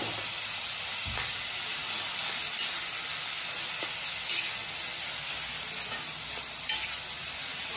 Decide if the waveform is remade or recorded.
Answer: recorded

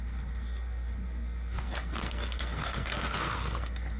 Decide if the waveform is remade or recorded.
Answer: remade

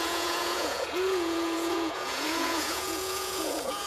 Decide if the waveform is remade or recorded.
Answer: remade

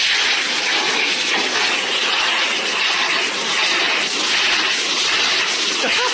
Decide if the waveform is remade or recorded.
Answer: recorded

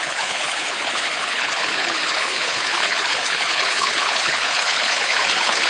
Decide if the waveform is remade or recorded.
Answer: remade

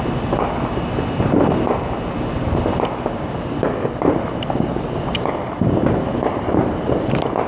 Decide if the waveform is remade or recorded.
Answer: recorded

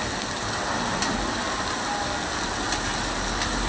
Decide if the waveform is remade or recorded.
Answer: recorded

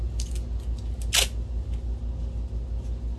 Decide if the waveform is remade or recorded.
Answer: recorded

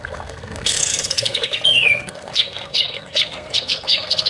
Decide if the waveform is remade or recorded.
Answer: remade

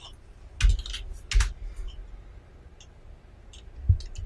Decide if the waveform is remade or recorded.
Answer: recorded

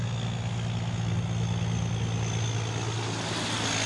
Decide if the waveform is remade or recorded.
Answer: recorded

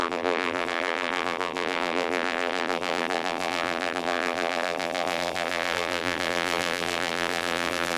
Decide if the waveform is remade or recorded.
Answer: remade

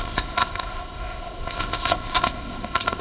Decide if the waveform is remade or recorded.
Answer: remade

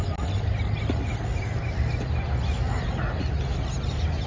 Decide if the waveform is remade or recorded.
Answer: recorded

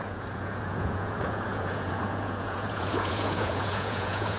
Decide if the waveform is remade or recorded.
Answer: remade